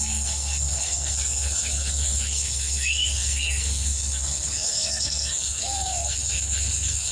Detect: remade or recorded remade